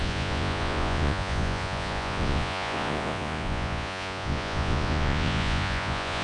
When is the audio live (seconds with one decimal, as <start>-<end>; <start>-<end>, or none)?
none